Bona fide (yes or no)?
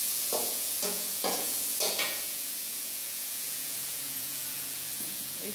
no